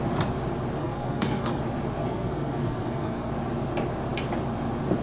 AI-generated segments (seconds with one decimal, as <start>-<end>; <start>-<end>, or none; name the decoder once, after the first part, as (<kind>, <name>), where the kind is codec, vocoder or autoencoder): 0.8-1.6 (codec, SNAC); 2.0-3.3